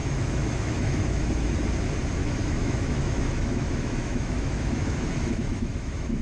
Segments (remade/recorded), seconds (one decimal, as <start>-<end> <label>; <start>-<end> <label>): 0.0-1.3 remade; 1.3-2.2 recorded; 2.2-6.2 remade